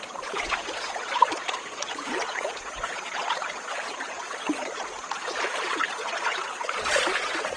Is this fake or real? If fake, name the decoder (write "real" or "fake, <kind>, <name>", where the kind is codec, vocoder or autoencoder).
fake, vocoder, Vocos